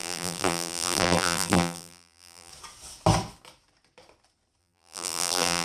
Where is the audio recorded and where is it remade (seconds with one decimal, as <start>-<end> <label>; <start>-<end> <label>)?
0.0-2.5 remade; 2.5-4.6 recorded; 4.6-5.6 remade